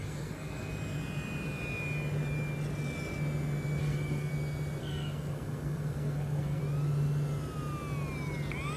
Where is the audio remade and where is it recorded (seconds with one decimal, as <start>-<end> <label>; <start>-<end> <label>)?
0.0-0.7 remade; 0.7-3.8 recorded; 3.8-4.3 remade; 4.3-4.8 recorded; 4.8-6.6 remade; 6.6-8.8 recorded